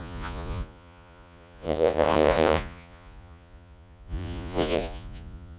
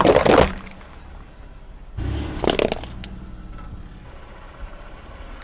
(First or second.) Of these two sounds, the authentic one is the second